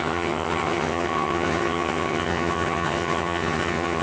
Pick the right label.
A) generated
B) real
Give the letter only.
A